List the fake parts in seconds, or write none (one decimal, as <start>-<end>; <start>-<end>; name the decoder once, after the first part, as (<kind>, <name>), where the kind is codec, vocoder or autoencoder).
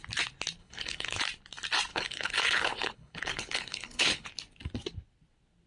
0.6-1.2 (codec, HILCodec); 1.9-4.3